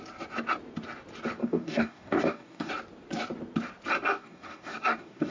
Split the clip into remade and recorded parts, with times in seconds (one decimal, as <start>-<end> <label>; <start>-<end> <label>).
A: 0.0-1.4 recorded; 1.4-2.7 remade; 2.7-4.1 recorded; 4.1-5.3 remade